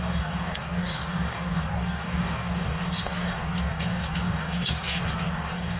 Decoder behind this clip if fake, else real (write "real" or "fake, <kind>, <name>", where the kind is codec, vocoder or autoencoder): fake, codec, DAC